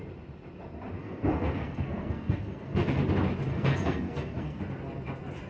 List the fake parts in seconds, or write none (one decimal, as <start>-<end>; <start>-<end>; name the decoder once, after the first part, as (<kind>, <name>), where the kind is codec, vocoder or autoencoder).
1.0-3.0 (codec, SNAC); 3.5-4.6